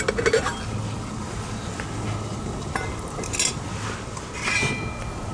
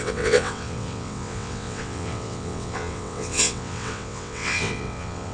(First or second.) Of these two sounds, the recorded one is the first